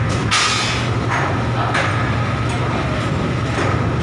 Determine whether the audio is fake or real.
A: real